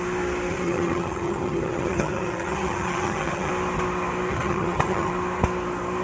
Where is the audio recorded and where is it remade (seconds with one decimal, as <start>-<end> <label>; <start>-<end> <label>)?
0.0-0.5 recorded; 0.5-3.5 remade; 3.5-4.3 recorded; 4.3-5.1 remade; 5.1-6.0 recorded